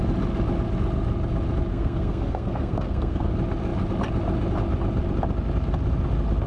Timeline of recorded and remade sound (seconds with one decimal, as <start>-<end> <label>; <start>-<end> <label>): 0.0-1.7 recorded; 1.7-3.3 remade; 3.3-6.5 recorded